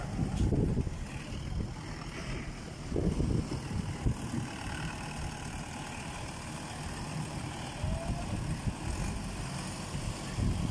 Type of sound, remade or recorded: recorded